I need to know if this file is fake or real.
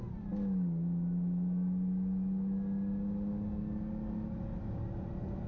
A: real